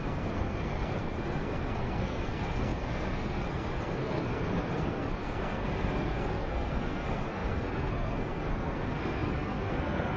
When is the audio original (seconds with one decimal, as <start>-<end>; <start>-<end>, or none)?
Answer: none